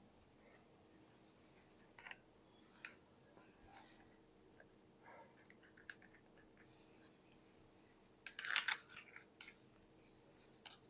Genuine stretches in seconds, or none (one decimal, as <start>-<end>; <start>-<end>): 0.0-10.9